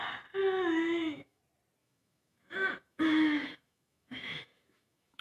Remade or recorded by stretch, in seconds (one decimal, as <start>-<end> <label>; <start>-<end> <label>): 0.0-0.4 recorded; 0.4-1.4 remade; 1.4-1.8 recorded; 1.8-5.2 remade